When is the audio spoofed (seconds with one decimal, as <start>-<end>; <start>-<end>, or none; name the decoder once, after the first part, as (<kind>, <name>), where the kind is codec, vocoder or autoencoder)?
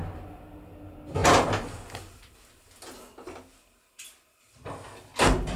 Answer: none